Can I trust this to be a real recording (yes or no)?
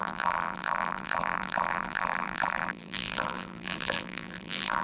no